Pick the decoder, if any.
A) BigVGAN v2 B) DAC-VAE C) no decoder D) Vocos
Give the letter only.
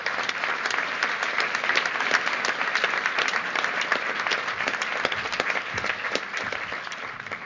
C